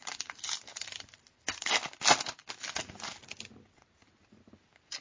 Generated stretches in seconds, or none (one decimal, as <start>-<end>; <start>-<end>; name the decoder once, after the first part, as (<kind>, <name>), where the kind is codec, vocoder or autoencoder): none